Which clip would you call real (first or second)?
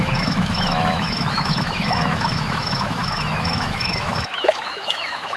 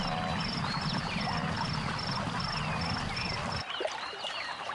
second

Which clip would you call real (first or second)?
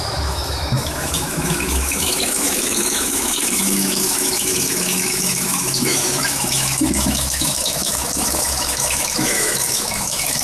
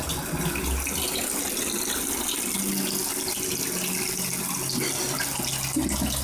second